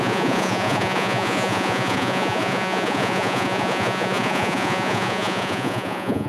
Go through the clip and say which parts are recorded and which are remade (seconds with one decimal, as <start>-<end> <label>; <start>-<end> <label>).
0.0-6.3 remade